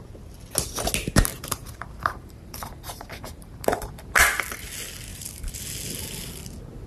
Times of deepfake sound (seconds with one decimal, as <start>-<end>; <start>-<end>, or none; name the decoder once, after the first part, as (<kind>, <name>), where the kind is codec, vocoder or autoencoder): 1.3-3.9 (vocoder, BigVGAN v2); 5.1-5.6

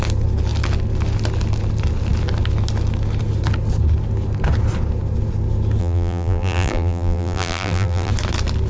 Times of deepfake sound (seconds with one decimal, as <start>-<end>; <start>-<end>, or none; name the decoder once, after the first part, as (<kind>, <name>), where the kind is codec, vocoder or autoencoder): 5.8-8.1 (vocoder, BigVGAN v2)

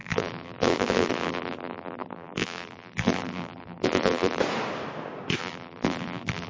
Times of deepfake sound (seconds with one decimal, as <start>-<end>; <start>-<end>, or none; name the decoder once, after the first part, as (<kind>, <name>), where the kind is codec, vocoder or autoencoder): 0.0-4.4 (vocoder, BigVGAN v2); 5.4-6.5

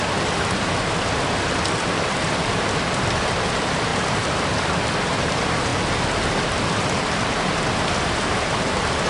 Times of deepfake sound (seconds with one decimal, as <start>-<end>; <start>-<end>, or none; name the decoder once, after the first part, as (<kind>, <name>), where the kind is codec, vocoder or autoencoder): 0.0-3.9 (vocoder, BigVGAN v2); 5.3-5.7; 6.3-9.1

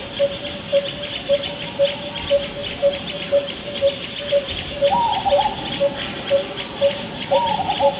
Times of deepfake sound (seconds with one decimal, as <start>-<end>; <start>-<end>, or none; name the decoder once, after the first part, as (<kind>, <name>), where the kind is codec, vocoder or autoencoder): 0.0-8.0 (vocoder, BigVGAN v2)